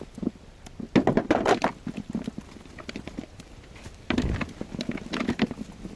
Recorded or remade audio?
recorded